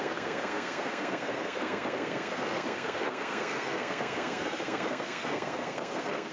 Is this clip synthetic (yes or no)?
yes